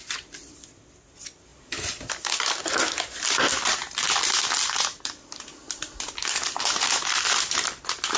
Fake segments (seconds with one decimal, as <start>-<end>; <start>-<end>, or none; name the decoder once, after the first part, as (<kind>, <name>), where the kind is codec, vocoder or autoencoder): none